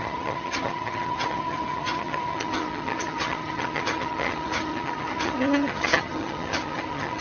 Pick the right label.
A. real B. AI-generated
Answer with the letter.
B